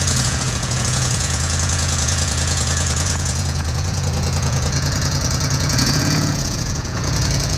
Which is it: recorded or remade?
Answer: remade